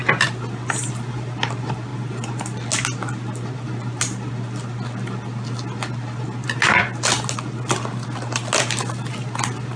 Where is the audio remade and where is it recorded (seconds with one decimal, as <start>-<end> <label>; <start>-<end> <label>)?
0.0-9.8 recorded